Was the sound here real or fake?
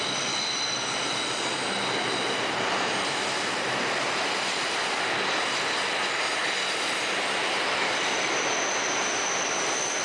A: real